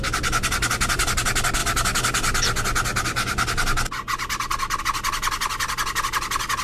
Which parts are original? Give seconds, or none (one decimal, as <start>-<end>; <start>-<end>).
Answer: 0.0-6.6